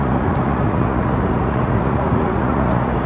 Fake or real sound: fake